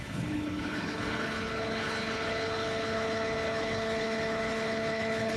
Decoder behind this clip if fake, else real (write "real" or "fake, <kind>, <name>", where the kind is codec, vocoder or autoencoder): fake, codec, HILCodec